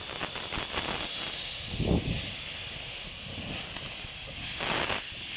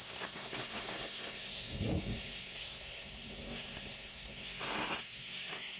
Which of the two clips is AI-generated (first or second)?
second